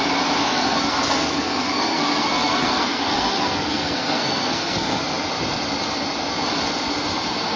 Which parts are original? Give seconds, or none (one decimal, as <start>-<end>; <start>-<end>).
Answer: 0.0-0.4; 5.0-7.6